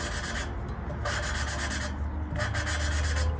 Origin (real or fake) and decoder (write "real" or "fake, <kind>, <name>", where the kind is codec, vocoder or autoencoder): real